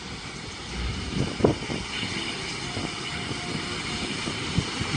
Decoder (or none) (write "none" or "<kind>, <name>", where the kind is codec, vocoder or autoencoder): none